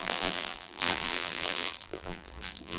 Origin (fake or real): fake